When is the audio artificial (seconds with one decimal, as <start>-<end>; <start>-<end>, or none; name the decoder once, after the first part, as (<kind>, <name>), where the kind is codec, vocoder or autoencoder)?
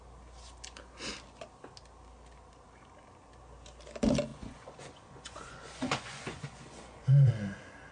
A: 4.3-7.3 (vocoder, Vocos)